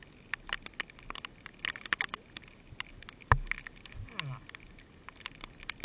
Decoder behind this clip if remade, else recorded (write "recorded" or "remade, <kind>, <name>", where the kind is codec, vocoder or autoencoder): recorded